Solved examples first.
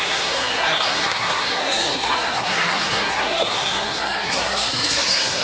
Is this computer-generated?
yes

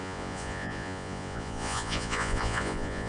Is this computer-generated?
yes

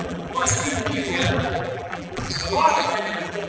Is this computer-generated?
yes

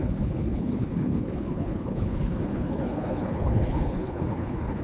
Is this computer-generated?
yes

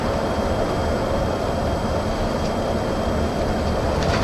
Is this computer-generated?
yes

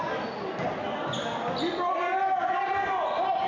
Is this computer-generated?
no